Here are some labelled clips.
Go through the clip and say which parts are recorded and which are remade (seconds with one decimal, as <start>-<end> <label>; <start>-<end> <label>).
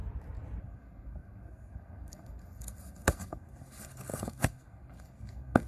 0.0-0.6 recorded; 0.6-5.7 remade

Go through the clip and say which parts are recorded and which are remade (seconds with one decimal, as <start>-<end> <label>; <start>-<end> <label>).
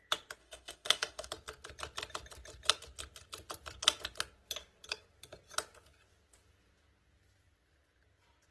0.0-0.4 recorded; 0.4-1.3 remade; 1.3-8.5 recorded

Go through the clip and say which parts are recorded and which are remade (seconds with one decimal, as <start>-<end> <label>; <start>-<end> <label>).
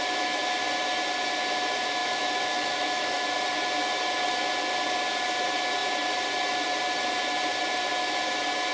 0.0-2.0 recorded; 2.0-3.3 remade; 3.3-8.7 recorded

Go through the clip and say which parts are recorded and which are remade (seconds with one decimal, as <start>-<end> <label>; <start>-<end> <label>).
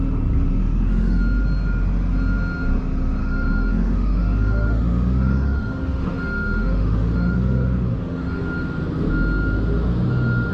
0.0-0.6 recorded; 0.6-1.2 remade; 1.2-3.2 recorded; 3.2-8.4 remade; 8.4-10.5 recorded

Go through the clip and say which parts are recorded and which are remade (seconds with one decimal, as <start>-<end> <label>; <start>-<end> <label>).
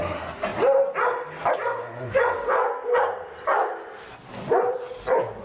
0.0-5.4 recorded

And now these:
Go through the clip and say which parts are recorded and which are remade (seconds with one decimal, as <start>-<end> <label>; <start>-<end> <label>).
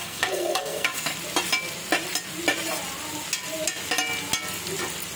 0.0-1.2 remade; 1.2-5.2 recorded